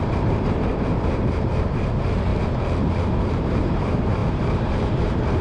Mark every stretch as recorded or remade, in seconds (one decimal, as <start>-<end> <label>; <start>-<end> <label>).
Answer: 0.0-2.3 remade; 2.3-3.0 recorded; 3.0-5.4 remade